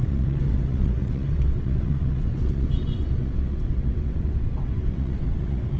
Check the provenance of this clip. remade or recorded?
remade